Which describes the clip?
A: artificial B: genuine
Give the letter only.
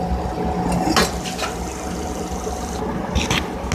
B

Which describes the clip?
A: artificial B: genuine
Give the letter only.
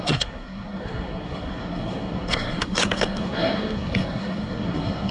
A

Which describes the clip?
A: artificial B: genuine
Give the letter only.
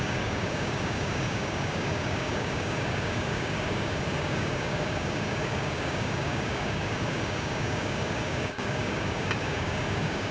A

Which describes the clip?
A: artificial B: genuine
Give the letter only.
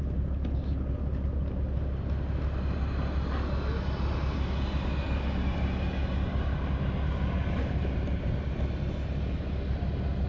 B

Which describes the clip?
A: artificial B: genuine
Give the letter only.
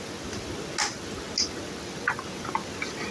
B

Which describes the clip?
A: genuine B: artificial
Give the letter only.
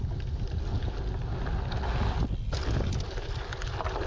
A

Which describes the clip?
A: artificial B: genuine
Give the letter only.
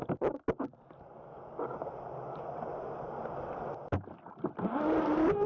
B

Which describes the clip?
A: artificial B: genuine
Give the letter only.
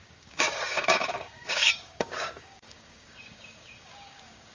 A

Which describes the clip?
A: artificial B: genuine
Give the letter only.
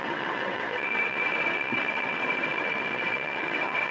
A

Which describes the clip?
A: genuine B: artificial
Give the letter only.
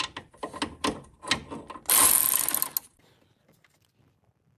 A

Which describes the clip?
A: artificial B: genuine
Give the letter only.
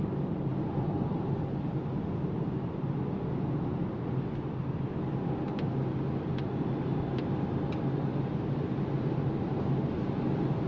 B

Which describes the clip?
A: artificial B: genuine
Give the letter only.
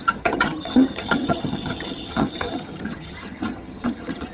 A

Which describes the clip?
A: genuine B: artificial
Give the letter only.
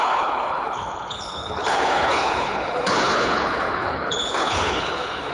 B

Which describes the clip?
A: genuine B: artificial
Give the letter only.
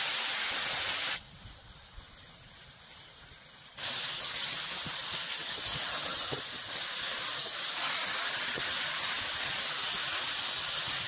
A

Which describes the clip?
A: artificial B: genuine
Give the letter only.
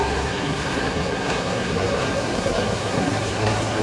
A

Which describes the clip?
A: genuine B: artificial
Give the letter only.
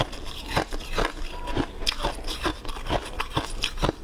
A